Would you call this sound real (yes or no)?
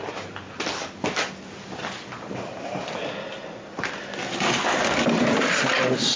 yes